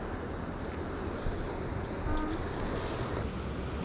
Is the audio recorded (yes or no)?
yes